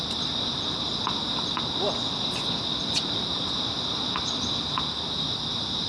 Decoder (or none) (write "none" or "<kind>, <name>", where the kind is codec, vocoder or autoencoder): none